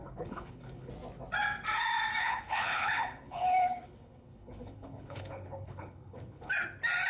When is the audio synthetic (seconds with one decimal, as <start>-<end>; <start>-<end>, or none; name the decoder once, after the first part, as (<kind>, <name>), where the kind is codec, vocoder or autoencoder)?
0.0-0.9 (codec, HILCodec); 2.2-6.5